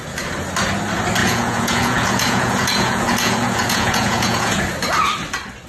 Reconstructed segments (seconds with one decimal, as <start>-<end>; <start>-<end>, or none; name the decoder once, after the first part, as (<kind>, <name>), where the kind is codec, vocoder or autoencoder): 1.2-4.6 (vocoder, Vocos)